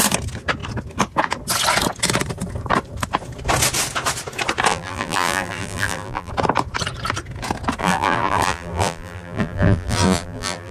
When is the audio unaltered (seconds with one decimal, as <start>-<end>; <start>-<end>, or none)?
0.0-4.7; 6.3-7.8